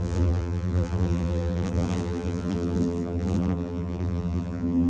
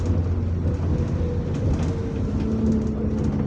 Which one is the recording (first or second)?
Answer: second